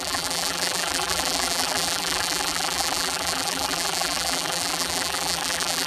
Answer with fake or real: fake